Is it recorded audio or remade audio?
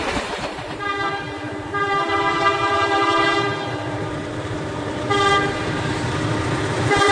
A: remade